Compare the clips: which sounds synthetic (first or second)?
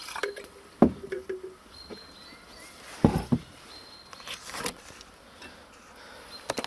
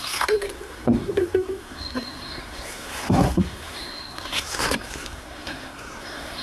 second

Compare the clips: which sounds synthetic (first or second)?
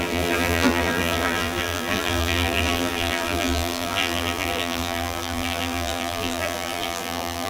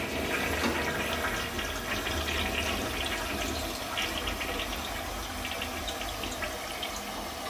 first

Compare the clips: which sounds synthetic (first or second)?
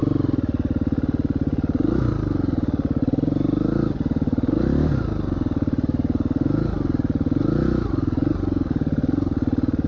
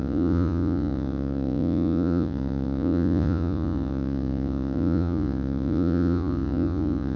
second